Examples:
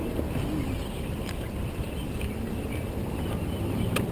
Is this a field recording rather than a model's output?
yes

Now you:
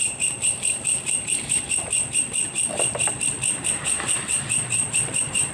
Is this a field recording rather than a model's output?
no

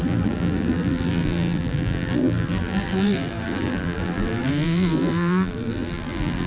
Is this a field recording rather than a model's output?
no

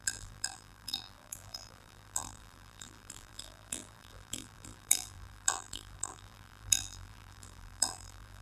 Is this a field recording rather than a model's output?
no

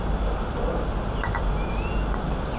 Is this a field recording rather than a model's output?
yes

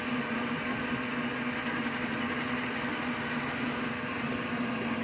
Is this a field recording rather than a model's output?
yes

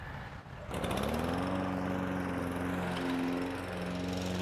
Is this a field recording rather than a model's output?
yes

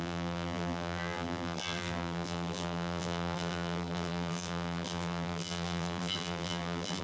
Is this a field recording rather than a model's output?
no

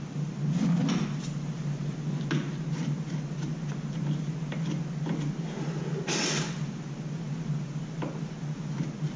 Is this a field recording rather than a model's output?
yes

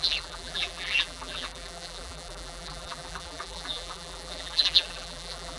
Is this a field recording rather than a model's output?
no